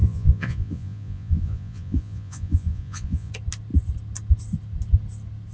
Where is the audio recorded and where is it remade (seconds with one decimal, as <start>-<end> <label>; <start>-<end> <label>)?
0.0-3.3 remade; 3.3-5.5 recorded